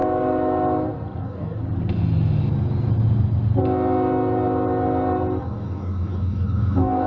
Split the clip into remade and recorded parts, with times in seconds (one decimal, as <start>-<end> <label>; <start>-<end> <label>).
0.0-1.2 recorded; 1.2-1.6 remade; 1.6-5.4 recorded; 5.4-7.1 remade